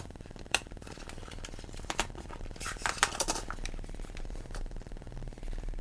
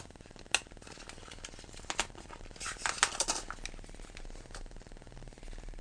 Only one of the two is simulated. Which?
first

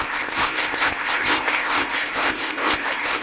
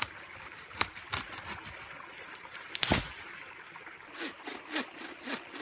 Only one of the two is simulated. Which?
first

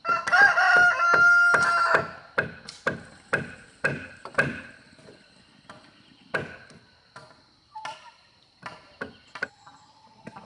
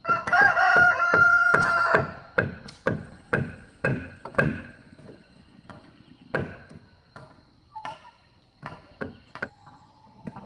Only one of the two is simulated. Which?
second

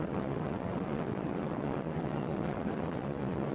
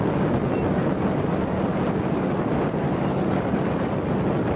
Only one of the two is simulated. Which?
first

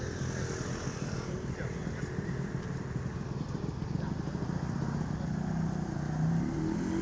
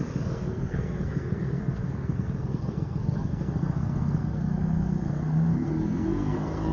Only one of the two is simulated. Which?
second